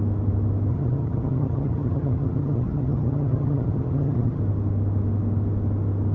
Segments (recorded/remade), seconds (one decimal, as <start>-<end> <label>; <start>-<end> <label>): 0.0-0.7 recorded; 0.7-4.4 remade; 4.4-6.1 recorded

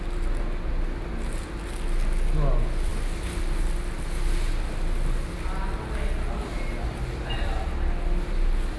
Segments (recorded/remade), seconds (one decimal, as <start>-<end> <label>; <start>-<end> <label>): 0.0-8.8 recorded